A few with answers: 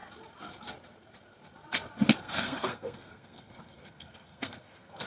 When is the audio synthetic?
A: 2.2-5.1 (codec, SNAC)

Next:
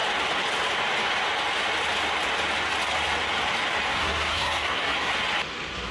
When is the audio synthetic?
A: 3.9-5.1 (codec, SNAC)

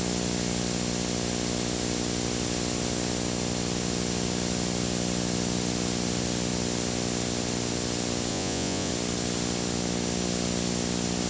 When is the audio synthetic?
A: 8.3-8.9 (vocoder, Vocos)